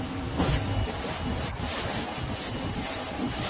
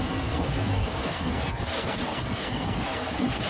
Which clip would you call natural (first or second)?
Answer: first